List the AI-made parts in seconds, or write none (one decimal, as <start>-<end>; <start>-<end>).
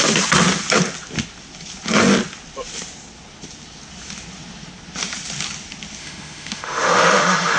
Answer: 6.0-7.6